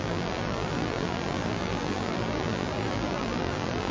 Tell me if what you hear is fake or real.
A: fake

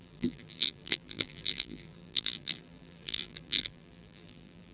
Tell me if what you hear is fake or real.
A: fake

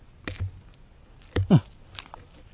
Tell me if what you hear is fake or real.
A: real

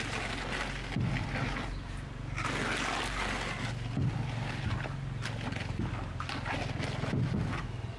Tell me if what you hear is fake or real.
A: real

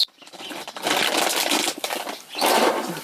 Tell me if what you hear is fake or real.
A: fake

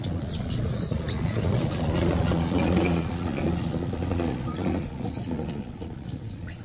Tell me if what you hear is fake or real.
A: fake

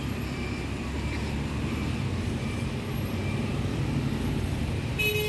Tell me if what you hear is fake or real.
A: real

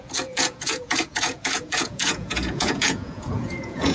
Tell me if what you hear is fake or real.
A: fake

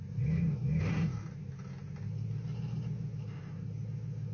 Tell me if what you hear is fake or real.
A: real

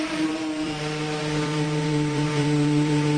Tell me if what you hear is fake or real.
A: fake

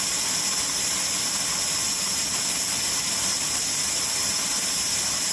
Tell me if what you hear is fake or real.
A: real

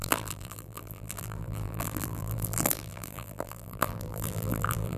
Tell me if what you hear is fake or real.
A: fake